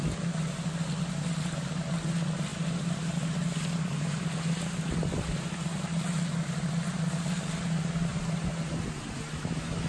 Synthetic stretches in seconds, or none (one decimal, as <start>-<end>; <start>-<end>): none